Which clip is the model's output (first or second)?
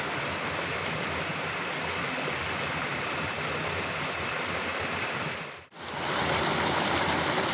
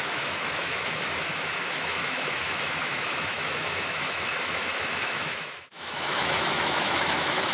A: second